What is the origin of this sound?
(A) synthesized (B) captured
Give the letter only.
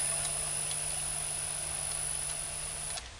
B